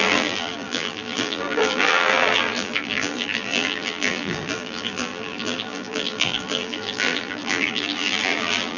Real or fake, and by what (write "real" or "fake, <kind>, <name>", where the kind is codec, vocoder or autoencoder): fake, vocoder, BigVGAN v2